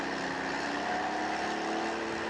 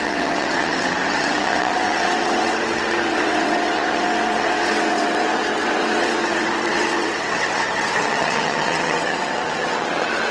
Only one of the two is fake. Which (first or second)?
second